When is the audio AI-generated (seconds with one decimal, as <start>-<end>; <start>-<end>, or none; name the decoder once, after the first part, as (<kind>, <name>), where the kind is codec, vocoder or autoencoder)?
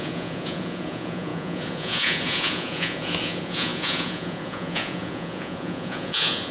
0.0-6.5 (vocoder, Vocos)